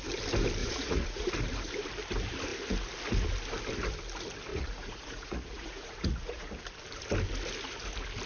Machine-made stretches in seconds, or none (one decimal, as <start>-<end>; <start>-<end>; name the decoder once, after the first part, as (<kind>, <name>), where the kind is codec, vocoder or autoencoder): 0.6-1.3 (vocoder, Vocos); 4.5-6.6